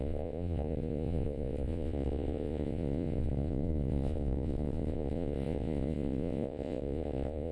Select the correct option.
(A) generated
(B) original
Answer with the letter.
A